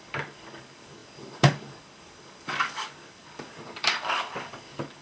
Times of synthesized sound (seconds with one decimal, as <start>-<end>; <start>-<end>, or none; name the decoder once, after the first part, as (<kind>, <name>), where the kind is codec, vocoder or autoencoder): 0.0-5.0 (codec, DAC)